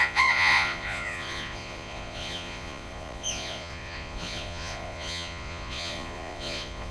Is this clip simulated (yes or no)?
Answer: yes